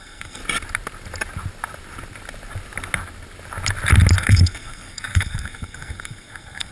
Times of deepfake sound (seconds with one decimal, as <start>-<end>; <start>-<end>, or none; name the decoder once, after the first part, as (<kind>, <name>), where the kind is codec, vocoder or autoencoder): 0.0-0.4 (codec, SNAC); 4.2-6.7